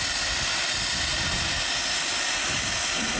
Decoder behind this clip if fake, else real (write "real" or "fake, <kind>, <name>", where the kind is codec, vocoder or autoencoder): real